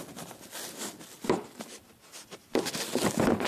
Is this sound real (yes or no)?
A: yes